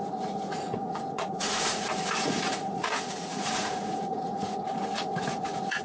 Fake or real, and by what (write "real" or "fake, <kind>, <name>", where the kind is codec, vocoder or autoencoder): fake, vocoder, Vocos